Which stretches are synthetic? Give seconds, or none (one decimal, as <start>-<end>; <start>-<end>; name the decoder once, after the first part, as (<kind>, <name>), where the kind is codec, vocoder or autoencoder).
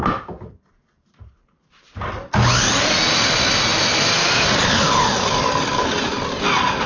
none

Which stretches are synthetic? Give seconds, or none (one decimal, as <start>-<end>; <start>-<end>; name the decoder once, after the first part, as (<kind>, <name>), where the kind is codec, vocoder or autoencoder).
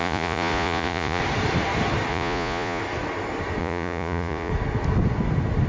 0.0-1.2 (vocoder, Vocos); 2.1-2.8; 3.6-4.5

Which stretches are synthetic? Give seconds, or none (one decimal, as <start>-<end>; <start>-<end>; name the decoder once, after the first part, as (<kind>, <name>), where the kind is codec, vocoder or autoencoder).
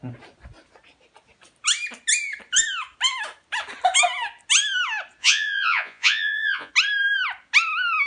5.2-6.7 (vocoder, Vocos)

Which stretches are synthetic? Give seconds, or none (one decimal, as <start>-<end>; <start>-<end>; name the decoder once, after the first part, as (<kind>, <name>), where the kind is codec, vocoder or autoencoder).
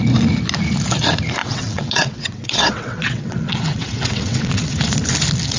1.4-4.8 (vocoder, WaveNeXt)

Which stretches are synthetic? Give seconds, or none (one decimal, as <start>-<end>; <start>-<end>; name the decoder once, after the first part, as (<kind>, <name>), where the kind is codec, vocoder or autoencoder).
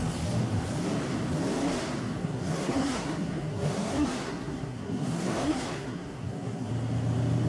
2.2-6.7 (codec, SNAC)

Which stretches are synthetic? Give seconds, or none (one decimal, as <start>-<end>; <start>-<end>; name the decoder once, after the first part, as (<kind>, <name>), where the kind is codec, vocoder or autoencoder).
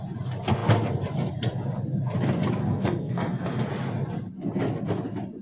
2.6-3.7 (codec, SNAC)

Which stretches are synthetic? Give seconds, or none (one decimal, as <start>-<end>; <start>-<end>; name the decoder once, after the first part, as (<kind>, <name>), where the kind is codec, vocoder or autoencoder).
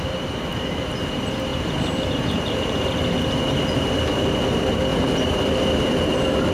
0.5-1.0 (vocoder, BigVGAN v2); 1.5-2.9; 4.9-6.1